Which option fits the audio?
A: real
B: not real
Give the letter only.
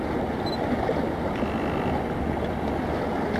A